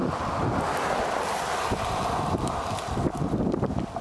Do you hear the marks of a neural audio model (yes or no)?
no